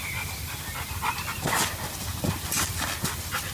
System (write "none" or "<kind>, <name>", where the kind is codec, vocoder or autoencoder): none